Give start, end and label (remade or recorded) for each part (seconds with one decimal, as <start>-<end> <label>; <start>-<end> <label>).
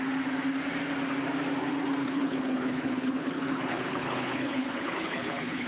0.0-2.0 recorded; 2.0-5.7 remade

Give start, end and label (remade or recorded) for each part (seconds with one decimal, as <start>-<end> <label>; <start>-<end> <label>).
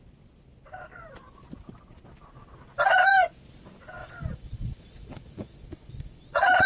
0.0-4.0 recorded; 4.0-6.7 remade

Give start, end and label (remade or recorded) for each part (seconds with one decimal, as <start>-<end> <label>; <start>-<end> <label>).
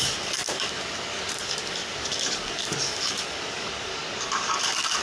0.0-5.0 remade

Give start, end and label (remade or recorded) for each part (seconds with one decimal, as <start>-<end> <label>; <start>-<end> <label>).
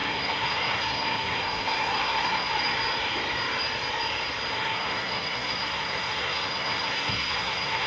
0.0-2.5 remade; 2.5-4.5 recorded; 4.5-7.9 remade